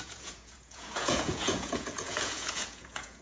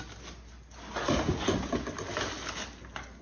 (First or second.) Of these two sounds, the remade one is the first